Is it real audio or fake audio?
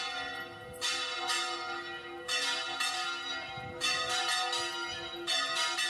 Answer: real